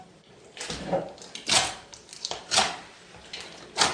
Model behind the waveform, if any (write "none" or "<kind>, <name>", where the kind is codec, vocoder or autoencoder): vocoder, BigVGAN v2